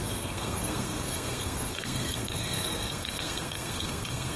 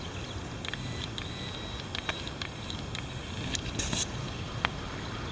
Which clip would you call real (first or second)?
second